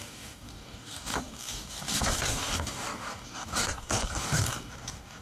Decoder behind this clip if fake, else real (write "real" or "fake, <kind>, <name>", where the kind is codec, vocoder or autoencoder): fake, codec, DAC